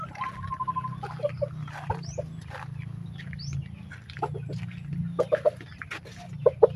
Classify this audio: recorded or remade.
recorded